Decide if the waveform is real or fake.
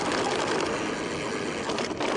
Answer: real